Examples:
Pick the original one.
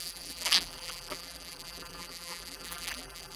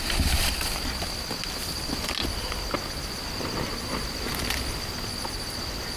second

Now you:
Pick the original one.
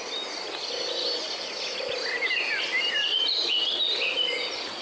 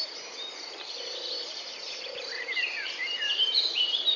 first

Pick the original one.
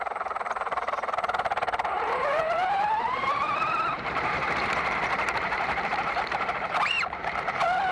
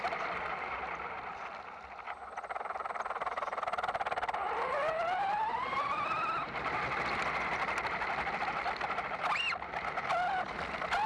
second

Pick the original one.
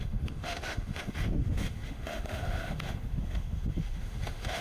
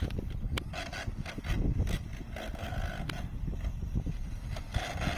second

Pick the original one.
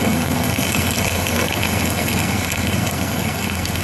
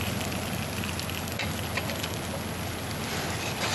second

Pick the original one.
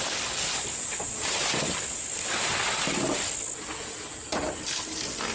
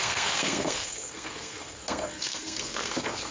first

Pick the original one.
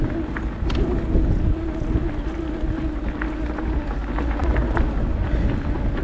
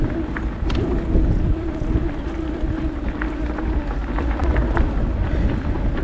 first